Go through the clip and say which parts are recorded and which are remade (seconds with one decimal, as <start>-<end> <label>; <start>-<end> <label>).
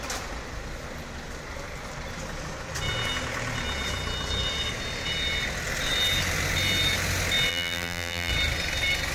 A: 0.0-7.5 recorded; 7.5-8.3 remade; 8.3-9.1 recorded